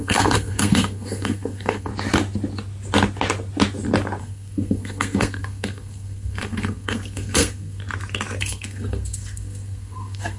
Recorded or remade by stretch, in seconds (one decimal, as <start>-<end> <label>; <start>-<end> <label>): 0.0-1.9 remade; 1.9-4.2 recorded; 4.2-7.8 remade; 7.8-8.4 recorded; 8.4-10.4 remade